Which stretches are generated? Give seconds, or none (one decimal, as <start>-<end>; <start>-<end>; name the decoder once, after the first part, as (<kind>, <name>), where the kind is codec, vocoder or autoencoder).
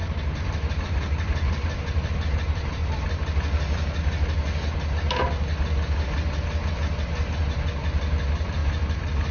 0.0-2.8 (vocoder, BigVGAN v2); 6.7-8.6